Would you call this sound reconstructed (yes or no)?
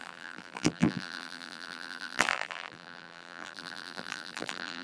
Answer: yes